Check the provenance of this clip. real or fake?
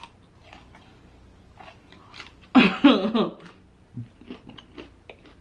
real